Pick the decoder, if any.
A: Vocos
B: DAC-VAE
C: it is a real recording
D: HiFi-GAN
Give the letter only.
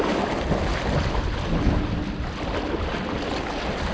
C